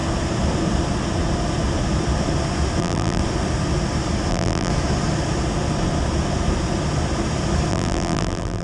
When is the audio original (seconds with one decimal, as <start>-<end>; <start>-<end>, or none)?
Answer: 0.0-2.8; 3.2-4.3; 4.7-7.7